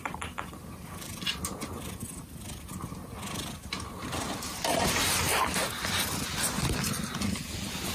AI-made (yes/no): yes